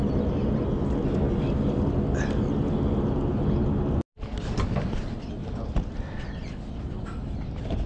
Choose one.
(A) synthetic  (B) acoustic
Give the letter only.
B